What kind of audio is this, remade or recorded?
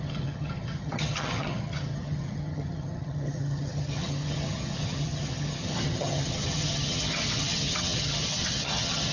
remade